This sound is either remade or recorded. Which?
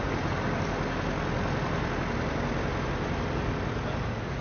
recorded